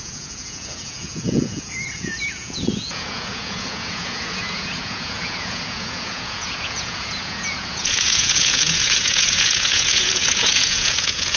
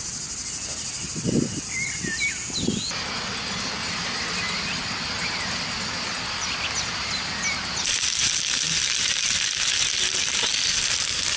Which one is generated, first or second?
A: first